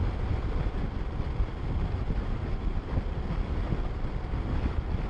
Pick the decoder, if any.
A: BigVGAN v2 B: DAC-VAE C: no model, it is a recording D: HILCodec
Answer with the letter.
C